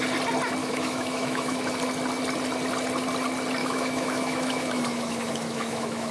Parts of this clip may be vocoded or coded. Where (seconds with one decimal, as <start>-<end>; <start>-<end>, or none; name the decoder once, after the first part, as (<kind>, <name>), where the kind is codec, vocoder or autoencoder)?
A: 0.6-1.7 (autoencoder, DAC-VAE); 3.6-6.1